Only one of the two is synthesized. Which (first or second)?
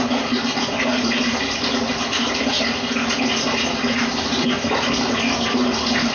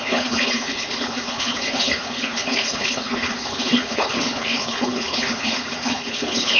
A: second